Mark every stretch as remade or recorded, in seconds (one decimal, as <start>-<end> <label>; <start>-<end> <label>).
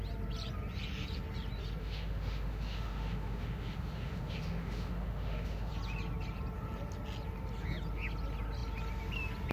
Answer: 0.0-1.8 recorded; 1.8-5.7 remade; 5.7-9.5 recorded